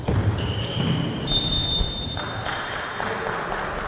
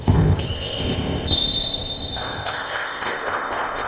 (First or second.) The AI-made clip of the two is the second